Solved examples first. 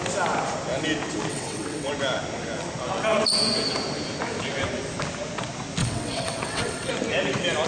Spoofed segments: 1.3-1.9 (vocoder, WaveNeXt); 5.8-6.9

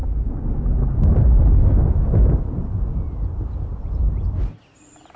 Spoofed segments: none

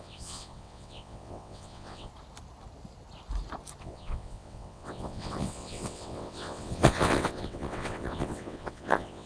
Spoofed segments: 0.0-2.1 (vocoder, WaveNeXt); 3.8-9.3

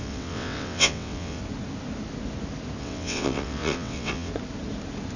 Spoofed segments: 0.0-1.4 (vocoder, WaveNeXt); 2.8-4.3

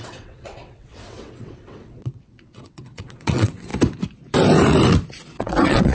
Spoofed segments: 0.0-3.7 (vocoder, WaveNeXt); 5.4-5.9

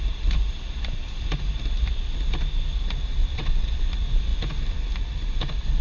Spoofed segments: 3.2-3.9 (vocoder, WaveNeXt)